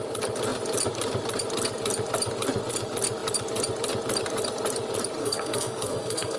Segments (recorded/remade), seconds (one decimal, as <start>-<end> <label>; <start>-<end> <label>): 0.0-5.2 recorded; 5.2-6.4 remade